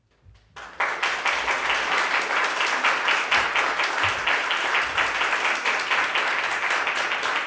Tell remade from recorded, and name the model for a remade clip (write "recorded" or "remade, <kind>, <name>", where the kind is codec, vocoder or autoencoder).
recorded